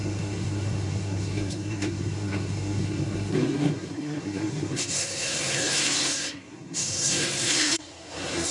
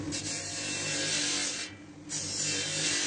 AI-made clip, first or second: first